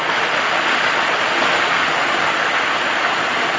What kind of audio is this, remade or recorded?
recorded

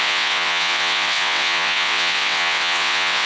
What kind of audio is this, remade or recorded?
remade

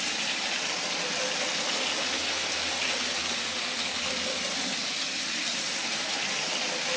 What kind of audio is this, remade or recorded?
recorded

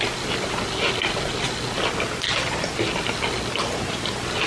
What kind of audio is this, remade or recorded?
recorded